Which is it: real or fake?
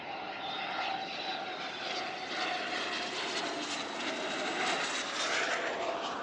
real